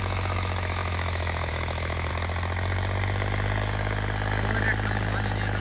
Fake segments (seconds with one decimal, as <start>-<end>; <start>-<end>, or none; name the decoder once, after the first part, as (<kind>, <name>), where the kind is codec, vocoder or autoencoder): 0.0-2.1 (autoencoder, DAC-VAE)